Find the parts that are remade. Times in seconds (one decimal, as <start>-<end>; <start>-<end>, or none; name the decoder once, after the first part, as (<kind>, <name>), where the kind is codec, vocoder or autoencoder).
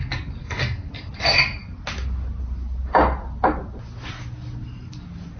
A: 0.4-0.9 (codec, SNAC)